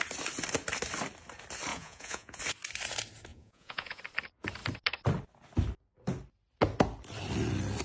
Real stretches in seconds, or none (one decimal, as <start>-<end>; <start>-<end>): 0.0-1.7; 2.4-3.3; 4.0-7.8